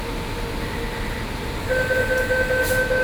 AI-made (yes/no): no